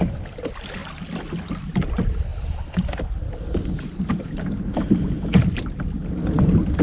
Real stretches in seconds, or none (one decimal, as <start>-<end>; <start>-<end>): 0.0-0.8; 1.9-2.3